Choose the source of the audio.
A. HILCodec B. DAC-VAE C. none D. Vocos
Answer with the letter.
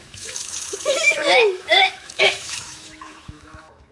B